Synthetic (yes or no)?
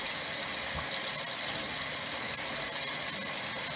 no